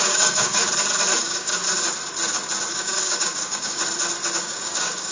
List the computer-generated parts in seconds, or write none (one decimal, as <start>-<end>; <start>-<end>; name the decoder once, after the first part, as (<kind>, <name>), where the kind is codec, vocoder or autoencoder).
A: 0.0-0.6 (codec, DAC); 1.2-1.6; 2.7-3.8; 4.4-5.1